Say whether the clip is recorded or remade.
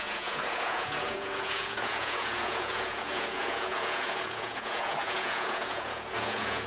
remade